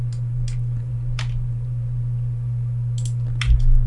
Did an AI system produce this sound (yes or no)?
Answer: no